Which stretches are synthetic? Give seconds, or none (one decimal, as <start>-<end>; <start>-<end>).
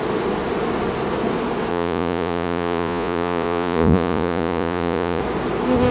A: 1.7-5.2